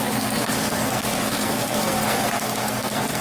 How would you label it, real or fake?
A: fake